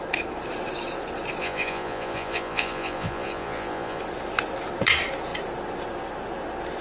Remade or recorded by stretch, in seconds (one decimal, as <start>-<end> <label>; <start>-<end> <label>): 0.0-1.4 recorded; 1.4-4.0 remade; 4.0-6.8 recorded